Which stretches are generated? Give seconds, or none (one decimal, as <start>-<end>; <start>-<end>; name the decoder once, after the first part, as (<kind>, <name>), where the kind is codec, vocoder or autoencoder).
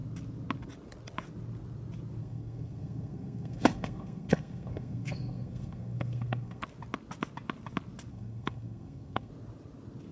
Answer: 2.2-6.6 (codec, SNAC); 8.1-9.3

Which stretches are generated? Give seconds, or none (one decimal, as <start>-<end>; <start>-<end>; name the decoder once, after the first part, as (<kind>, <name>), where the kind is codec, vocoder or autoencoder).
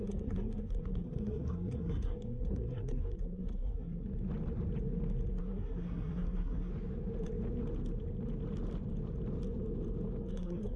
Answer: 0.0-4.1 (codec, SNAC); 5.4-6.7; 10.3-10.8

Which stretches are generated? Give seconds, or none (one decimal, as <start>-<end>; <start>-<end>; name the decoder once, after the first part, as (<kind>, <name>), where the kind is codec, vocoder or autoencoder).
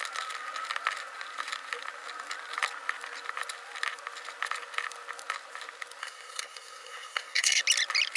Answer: 6.0-7.6 (codec, SNAC)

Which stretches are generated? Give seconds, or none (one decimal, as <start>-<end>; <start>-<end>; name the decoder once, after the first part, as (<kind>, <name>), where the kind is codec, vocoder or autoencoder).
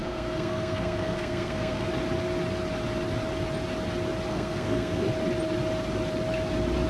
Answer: 0.0-1.9 (codec, SNAC); 4.3-5.0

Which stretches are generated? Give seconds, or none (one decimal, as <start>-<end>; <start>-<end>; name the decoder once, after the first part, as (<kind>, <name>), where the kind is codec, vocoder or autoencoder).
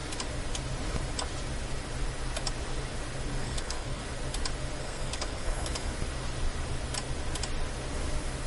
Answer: 3.4-4.0 (codec, SNAC); 4.8-5.9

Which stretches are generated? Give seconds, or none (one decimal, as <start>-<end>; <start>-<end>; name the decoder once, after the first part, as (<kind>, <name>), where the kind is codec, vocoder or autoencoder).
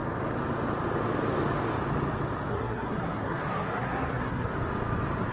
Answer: 2.5-4.5 (codec, SNAC)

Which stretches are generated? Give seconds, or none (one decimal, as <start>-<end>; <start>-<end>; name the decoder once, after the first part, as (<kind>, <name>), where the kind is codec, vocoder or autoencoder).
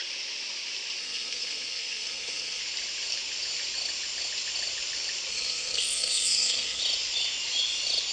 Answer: 1.0-2.6 (codec, SNAC); 5.3-6.8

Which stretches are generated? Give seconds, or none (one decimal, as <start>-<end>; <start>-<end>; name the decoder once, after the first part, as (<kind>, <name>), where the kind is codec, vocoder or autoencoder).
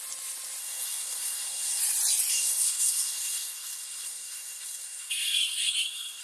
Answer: 0.6-1.8 (codec, SNAC); 2.3-6.2